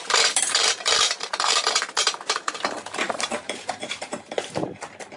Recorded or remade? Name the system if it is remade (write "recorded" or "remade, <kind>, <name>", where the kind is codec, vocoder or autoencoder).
remade, vocoder, BigVGAN v2